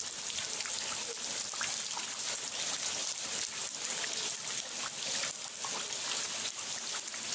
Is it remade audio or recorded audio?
recorded